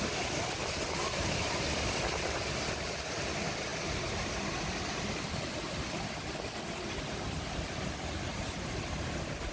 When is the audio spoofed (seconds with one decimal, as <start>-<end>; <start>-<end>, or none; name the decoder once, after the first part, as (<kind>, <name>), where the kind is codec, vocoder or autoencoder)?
none